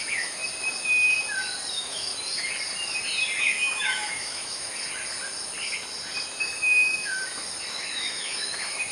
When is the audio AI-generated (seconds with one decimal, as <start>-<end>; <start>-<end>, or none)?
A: 0.0-0.4; 1.7-2.1; 3.4-4.7; 6.4-7.2; 7.7-8.9